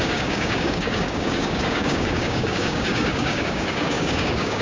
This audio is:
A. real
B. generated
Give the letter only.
B